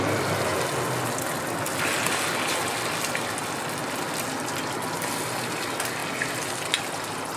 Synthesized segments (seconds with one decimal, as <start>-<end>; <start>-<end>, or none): none